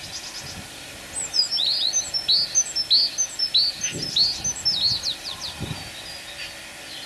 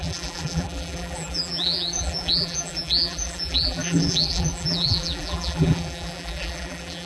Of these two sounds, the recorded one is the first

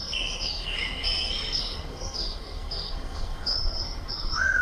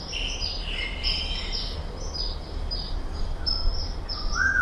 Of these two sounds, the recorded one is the second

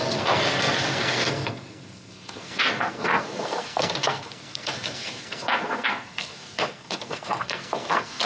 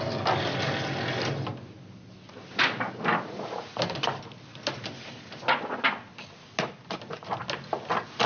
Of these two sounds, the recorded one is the second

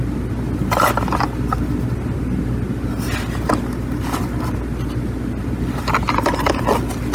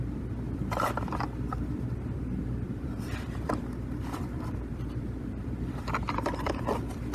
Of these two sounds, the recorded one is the first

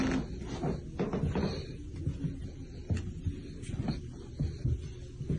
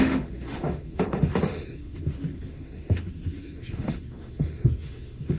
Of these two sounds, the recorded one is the first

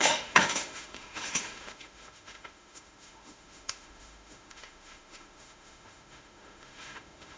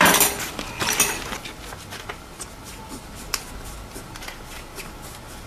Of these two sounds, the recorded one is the second